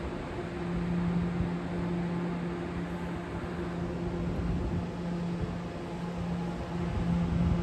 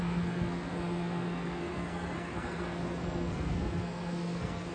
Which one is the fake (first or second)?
second